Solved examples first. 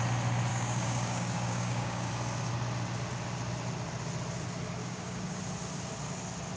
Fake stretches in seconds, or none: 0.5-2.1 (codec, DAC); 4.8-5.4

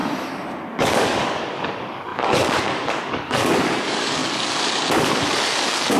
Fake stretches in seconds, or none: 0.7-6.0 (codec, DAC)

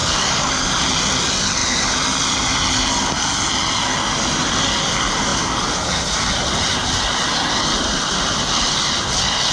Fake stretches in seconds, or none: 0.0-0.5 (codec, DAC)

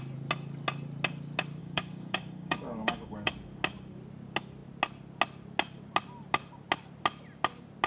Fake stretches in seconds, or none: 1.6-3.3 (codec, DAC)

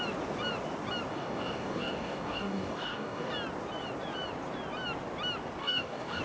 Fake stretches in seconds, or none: 1.1-3.3 (codec, DAC); 5.6-6.2

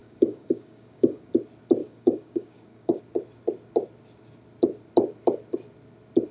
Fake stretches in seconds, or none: 0.0-1.3 (codec, DAC); 1.8-3.0

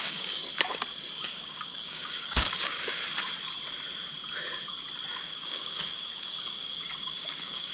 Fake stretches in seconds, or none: 0.0-0.4 (codec, DAC); 1.2-3.0; 5.1-7.7